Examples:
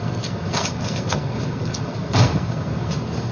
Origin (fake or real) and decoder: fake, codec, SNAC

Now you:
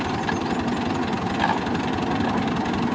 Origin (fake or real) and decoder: real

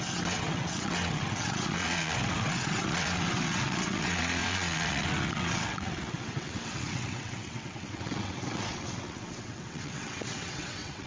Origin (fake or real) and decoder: fake, vocoder, WaveNeXt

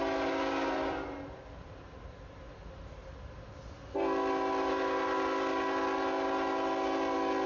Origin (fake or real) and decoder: real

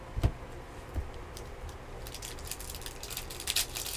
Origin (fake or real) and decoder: real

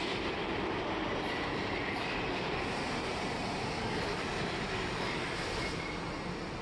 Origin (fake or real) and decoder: real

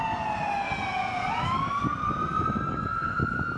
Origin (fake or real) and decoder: real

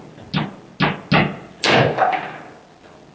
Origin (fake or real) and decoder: real